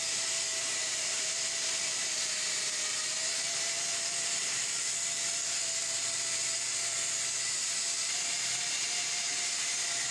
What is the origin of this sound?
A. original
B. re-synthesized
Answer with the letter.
A